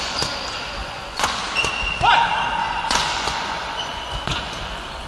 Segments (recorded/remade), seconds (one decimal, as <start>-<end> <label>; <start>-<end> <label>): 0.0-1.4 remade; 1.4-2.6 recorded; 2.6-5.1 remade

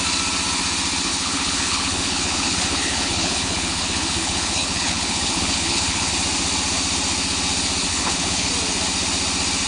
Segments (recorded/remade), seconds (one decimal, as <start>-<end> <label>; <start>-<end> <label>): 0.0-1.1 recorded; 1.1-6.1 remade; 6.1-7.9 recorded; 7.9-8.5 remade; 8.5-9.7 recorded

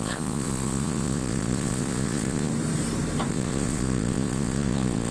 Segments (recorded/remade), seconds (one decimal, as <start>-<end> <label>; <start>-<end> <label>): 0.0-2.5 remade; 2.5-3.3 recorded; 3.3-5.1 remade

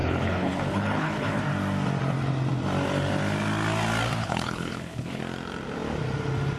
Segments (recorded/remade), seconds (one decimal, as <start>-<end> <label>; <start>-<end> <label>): 0.0-1.4 remade; 1.4-4.2 recorded; 4.2-5.2 remade; 5.2-6.6 recorded

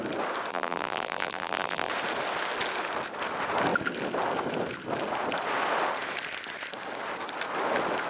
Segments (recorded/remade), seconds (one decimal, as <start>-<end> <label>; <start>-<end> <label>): 0.0-0.5 recorded; 0.5-1.9 remade; 1.9-8.1 recorded

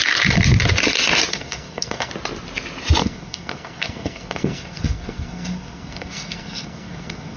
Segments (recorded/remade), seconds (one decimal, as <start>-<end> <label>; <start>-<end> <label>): 0.0-1.3 recorded; 1.3-2.1 remade; 2.1-3.0 recorded; 3.0-7.4 remade

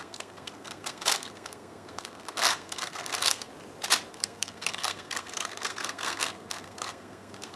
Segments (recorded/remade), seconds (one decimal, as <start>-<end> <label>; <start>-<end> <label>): 0.0-3.5 remade; 3.5-4.1 recorded; 4.1-7.6 remade